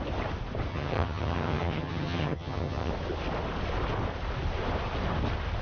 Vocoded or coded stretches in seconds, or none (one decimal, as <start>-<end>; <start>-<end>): 0.7-2.9